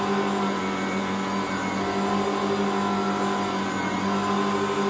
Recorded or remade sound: recorded